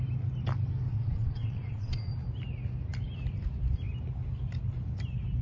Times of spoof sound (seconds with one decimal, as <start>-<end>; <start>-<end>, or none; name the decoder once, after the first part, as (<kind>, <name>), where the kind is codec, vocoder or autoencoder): 0.9-2.1 (vocoder, WaveNeXt)